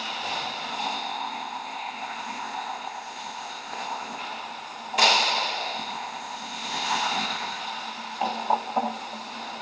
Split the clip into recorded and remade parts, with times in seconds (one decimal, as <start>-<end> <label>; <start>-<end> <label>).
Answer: 0.0-0.7 recorded; 0.7-4.2 remade; 4.2-5.6 recorded; 5.6-7.6 remade; 7.6-9.6 recorded